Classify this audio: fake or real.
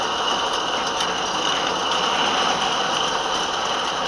real